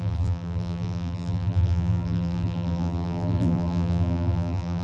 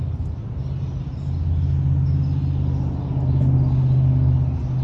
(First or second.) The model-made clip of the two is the first